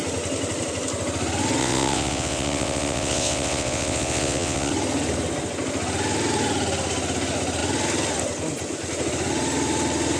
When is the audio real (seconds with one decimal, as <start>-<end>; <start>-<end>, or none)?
0.0-1.6; 4.7-10.2